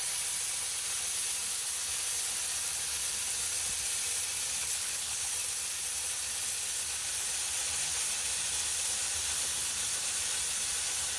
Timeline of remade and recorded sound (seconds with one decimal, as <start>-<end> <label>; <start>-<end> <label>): 0.0-4.6 recorded; 4.6-5.3 remade; 5.3-11.2 recorded

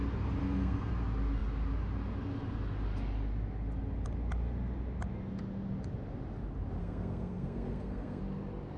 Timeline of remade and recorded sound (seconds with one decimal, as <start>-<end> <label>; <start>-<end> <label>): 0.0-0.4 recorded; 0.4-0.9 remade; 0.9-6.8 recorded; 6.8-8.2 remade; 8.2-8.8 recorded

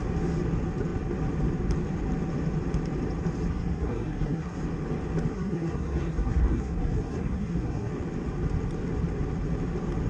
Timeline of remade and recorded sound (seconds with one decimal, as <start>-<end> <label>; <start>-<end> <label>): 0.0-3.5 recorded; 3.5-4.6 remade; 4.6-5.3 recorded; 5.3-7.9 remade; 7.9-10.1 recorded